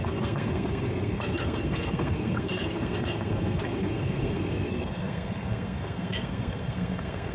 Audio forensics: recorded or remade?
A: remade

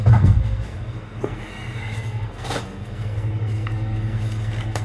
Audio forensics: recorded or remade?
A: remade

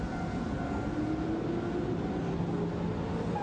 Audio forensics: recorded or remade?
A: recorded